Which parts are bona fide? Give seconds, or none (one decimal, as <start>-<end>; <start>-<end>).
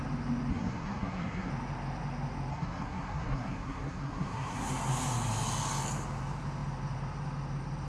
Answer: 0.0-0.5; 1.5-2.5; 4.7-7.9